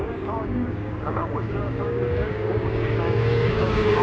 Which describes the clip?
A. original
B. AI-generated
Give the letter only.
B